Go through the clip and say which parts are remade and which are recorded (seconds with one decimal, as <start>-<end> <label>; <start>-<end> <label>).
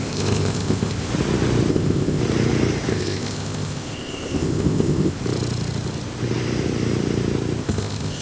0.0-1.1 remade; 1.1-1.7 recorded; 1.7-2.2 remade; 2.2-2.9 recorded; 2.9-5.2 remade; 5.2-7.6 recorded; 7.6-8.2 remade